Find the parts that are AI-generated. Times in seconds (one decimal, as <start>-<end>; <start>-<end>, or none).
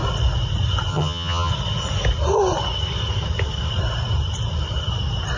0.9-1.5